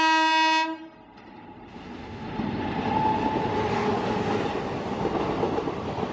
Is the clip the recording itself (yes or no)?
yes